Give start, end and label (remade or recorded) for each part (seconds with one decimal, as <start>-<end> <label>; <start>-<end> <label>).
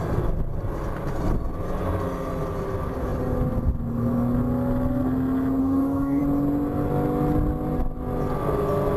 0.0-5.6 recorded; 5.6-6.2 remade; 6.2-9.0 recorded